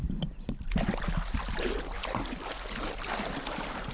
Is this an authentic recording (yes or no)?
yes